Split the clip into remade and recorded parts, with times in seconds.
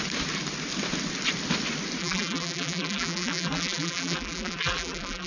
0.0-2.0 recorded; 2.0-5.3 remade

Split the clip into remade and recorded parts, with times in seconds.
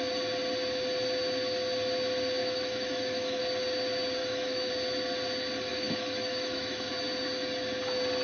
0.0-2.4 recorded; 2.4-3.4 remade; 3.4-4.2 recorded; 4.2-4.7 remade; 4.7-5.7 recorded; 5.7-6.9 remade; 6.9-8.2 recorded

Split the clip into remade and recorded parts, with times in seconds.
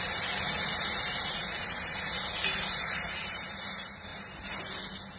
0.0-4.1 remade; 4.1-5.2 recorded